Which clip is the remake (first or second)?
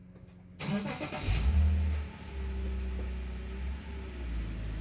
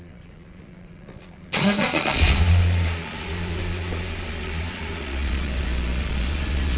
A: second